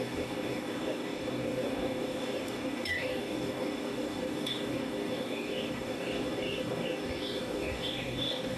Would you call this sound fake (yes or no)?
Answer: yes